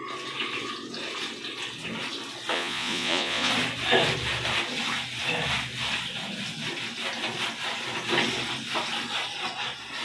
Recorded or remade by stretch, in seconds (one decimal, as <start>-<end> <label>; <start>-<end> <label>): 0.0-2.5 recorded; 2.5-3.5 remade; 3.5-10.0 recorded